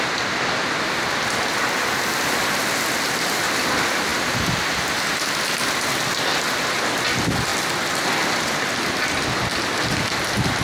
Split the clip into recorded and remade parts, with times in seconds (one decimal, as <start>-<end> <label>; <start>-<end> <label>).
0.0-10.6 recorded